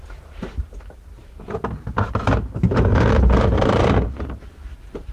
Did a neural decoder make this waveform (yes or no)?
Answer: yes